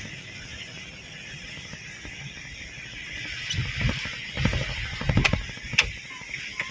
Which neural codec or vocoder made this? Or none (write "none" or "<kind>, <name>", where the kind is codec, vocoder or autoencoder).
none